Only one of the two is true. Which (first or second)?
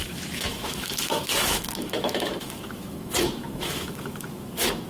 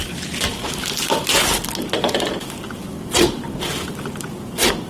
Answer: second